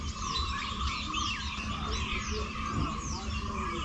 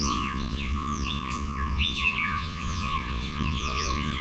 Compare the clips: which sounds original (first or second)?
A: first